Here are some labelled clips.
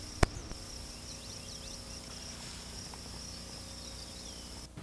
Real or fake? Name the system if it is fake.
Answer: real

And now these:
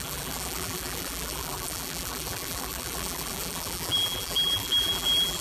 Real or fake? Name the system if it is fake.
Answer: fake, vocoder, BigVGAN v2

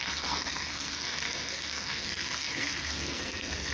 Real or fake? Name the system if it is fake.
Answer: fake, codec, SNAC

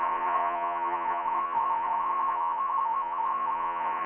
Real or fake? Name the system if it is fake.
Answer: fake, vocoder, Vocos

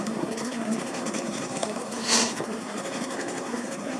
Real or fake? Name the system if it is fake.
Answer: fake, codec, SNAC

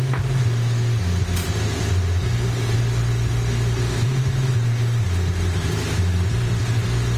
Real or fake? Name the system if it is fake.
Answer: real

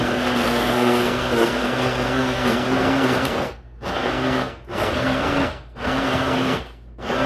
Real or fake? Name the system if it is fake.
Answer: fake, codec, SNAC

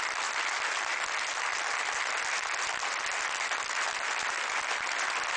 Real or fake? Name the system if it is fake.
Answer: real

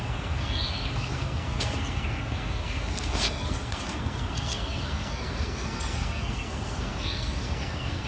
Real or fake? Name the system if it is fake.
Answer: fake, codec, SNAC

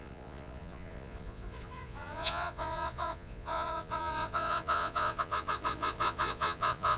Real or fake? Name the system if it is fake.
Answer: fake, vocoder, Vocos